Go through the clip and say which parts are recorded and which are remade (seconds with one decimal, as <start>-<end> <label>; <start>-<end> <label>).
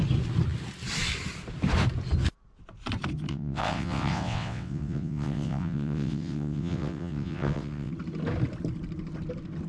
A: 0.0-3.3 recorded; 3.3-7.9 remade; 7.9-9.7 recorded